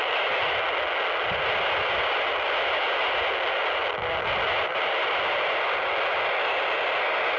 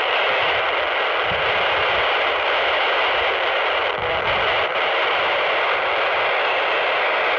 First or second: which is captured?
first